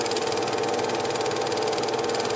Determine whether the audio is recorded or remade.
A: recorded